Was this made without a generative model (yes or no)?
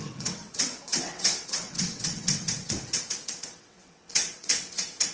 no